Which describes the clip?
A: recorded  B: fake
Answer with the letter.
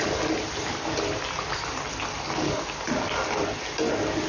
A